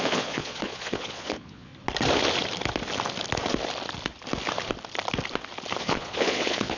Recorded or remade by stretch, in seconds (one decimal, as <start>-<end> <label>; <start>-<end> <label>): 0.0-1.7 remade; 1.7-5.8 recorded; 5.8-6.8 remade